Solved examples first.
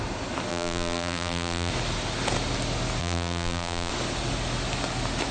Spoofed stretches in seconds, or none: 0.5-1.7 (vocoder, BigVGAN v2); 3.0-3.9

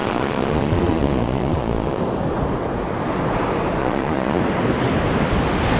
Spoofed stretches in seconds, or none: 0.0-2.0 (vocoder, Vocos); 3.8-4.4